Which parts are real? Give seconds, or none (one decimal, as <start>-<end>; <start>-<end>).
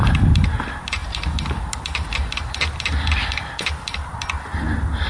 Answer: 0.0-5.1